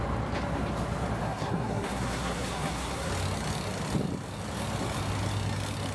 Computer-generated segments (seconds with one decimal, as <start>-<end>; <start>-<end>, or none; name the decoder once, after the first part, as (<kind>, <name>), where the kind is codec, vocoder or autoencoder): 1.2-3.1 (codec, SNAC)